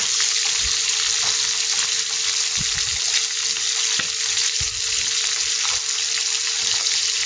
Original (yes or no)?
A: yes